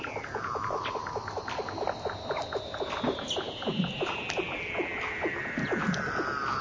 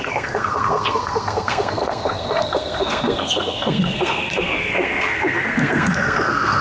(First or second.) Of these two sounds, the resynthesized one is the second